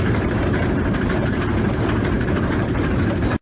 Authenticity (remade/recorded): remade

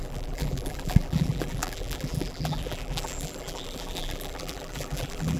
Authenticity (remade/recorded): remade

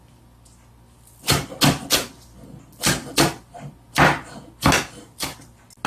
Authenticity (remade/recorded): recorded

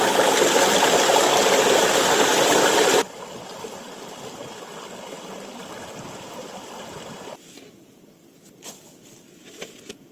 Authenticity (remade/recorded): recorded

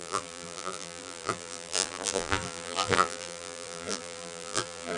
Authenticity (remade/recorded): remade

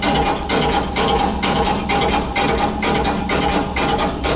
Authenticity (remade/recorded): recorded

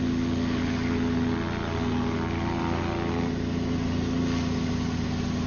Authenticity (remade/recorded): recorded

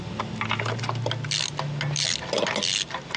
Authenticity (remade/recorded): recorded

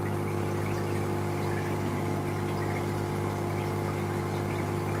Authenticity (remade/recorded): recorded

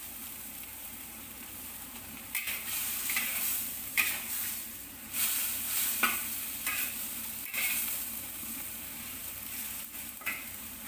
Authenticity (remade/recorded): remade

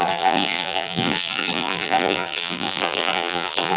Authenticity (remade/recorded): remade